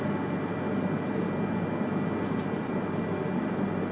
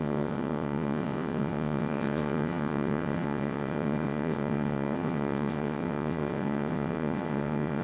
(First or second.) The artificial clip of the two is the second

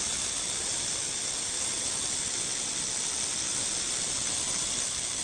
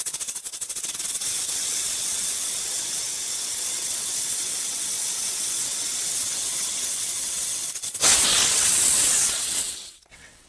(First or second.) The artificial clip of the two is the second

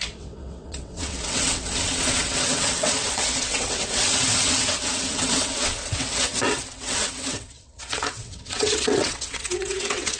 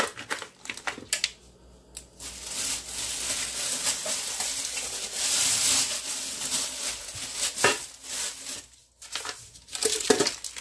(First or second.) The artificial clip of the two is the first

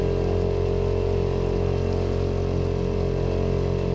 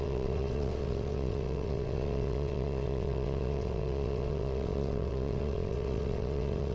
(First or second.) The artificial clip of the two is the second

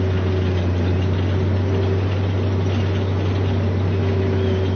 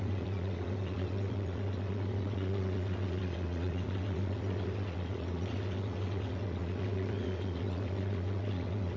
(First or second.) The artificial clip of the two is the second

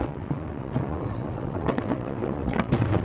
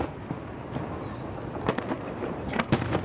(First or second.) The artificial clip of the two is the first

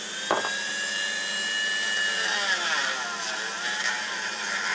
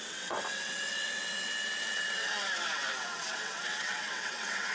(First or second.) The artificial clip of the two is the second